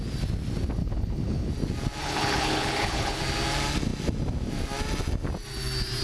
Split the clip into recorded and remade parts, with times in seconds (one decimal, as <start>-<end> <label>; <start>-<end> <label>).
0.0-0.8 recorded; 0.8-1.5 remade; 1.5-2.0 recorded; 2.0-3.2 remade; 3.2-6.0 recorded